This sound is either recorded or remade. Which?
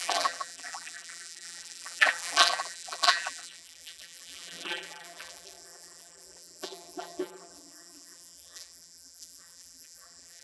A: remade